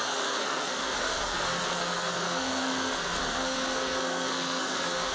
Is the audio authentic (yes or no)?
no